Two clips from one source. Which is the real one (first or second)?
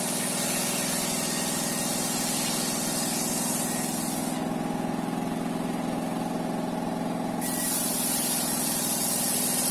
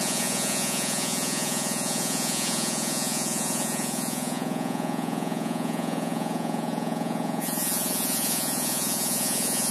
first